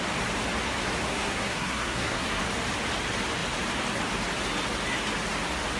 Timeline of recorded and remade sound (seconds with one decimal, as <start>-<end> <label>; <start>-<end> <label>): 0.0-1.1 recorded; 1.1-2.4 remade; 2.4-5.8 recorded